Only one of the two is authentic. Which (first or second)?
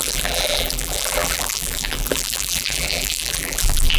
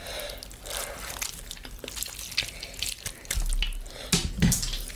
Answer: second